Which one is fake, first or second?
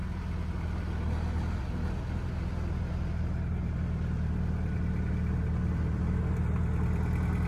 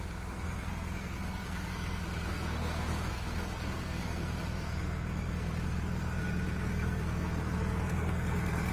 second